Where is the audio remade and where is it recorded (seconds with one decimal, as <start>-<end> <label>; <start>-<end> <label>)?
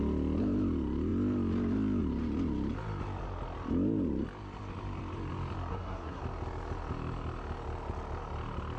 0.0-5.7 recorded; 5.7-6.2 remade; 6.2-8.8 recorded